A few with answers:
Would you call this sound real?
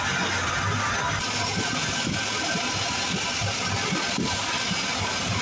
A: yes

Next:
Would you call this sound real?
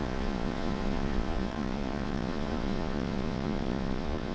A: no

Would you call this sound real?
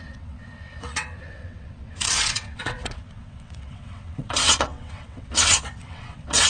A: no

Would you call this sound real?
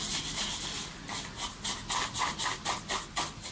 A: yes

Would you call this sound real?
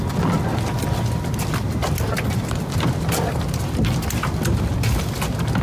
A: yes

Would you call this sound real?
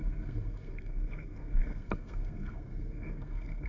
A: no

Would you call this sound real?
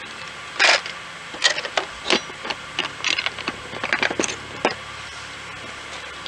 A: yes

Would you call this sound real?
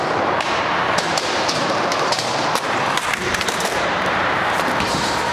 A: no